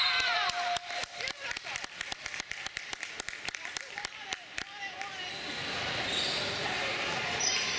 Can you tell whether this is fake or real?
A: fake